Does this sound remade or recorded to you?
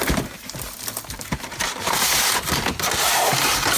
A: recorded